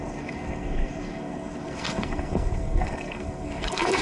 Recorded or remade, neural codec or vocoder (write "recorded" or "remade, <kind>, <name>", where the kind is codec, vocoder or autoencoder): remade, codec, SNAC